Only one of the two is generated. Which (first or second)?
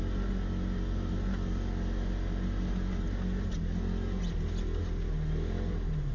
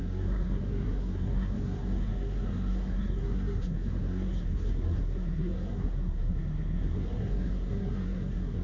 second